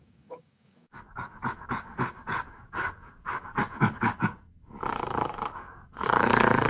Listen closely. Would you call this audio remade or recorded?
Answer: remade